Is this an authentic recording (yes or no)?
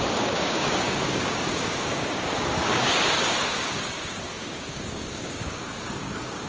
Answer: no